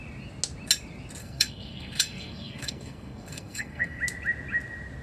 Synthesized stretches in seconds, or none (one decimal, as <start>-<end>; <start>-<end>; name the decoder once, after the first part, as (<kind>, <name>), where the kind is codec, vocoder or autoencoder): 1.2-4.0 (codec, SNAC)